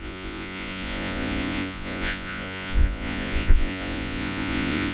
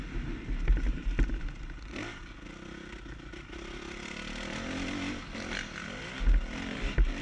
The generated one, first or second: first